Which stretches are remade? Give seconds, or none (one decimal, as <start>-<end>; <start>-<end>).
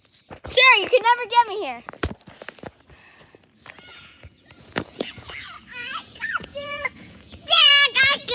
3.9-5.1; 5.7-7.7